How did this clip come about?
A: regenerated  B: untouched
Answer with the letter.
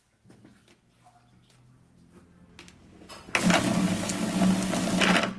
B